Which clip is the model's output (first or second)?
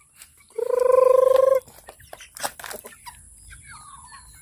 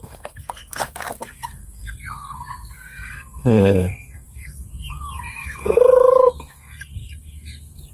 second